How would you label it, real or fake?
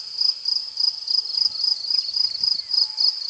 real